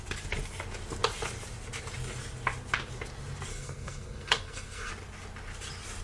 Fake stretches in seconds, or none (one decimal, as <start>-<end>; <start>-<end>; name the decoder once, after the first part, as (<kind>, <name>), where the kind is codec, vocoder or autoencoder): 3.5-4.9 (codec, SNAC)